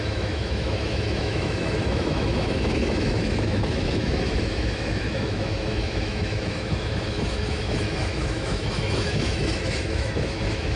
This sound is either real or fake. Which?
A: fake